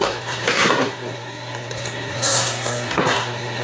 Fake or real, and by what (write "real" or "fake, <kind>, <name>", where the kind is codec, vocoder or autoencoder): fake, codec, SNAC